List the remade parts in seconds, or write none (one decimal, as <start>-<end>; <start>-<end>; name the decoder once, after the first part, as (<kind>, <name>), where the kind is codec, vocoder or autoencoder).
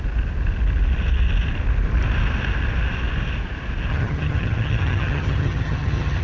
3.9-6.2 (vocoder, HiFi-GAN)